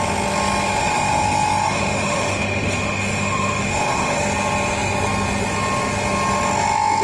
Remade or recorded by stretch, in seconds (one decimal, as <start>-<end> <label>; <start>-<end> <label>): 0.0-0.8 recorded; 0.8-4.3 remade; 4.3-7.0 recorded